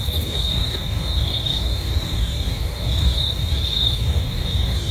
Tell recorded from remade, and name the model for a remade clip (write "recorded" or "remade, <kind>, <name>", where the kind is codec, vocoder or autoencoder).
remade, codec, DAC